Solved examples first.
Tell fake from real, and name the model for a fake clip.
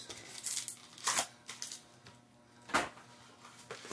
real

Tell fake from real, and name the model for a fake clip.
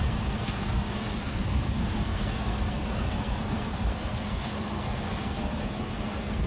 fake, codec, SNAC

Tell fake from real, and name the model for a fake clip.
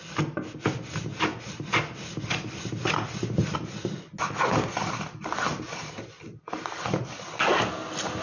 real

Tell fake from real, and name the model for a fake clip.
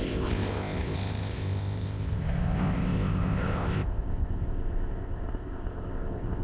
fake, codec, ZipCodec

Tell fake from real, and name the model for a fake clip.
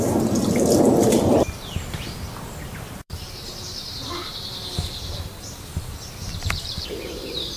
fake, vocoder, BigVGAN v2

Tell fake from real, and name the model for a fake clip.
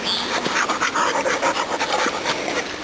real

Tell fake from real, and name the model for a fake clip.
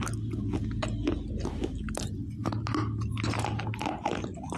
real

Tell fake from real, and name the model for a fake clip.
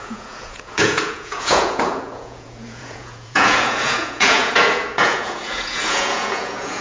fake, vocoder, Vocos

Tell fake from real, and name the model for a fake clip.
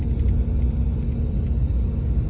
real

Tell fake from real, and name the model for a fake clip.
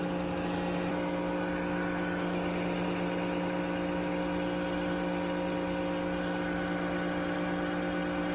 real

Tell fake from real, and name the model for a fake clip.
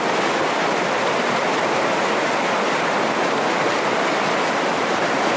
real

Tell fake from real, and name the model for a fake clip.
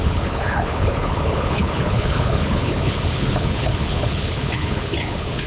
fake, codec, HILCodec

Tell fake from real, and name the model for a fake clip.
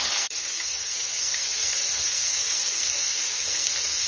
fake, codec, SNAC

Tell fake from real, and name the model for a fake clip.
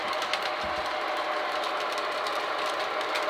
real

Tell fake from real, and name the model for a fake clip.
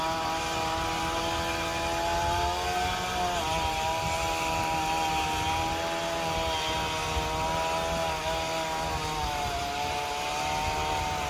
real